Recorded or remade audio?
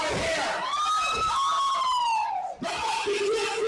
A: recorded